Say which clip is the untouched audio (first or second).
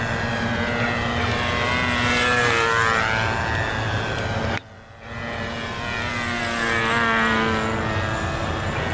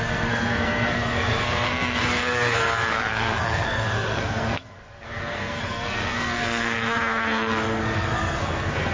first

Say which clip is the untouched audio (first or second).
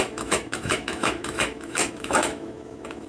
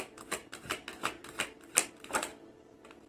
second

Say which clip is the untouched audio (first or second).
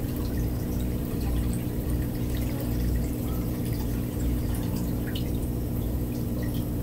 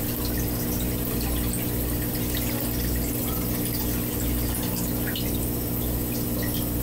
second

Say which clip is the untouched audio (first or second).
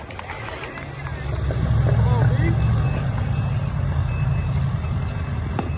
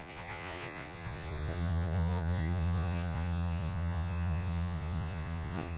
first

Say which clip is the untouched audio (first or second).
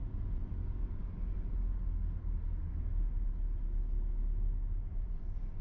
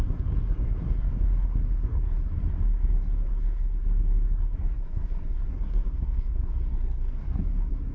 first